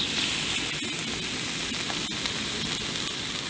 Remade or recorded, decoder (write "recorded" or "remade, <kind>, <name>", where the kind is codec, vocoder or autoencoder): recorded